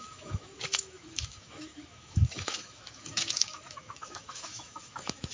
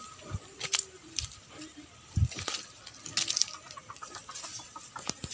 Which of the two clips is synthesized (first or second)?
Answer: first